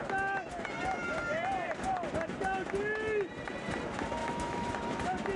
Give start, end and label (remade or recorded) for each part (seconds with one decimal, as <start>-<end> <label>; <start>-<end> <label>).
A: 0.0-4.2 recorded; 4.2-4.7 remade; 4.7-5.4 recorded